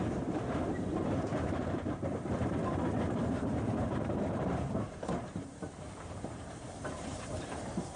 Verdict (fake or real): fake